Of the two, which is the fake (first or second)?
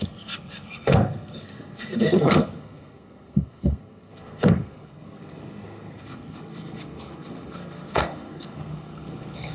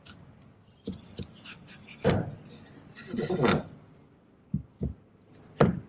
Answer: first